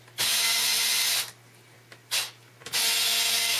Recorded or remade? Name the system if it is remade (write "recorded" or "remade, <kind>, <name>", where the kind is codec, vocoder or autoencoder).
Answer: recorded